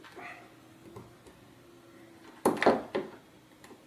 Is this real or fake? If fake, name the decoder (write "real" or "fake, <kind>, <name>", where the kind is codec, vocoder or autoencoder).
real